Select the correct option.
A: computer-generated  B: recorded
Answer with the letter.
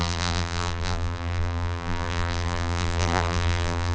A